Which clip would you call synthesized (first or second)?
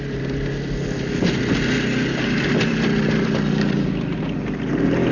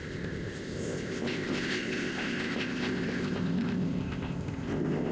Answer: second